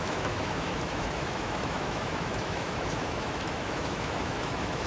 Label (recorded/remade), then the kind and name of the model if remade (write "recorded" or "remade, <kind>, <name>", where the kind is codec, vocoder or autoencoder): remade, autoencoder, DAC-VAE